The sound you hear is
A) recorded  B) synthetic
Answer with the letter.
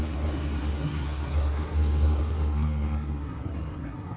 B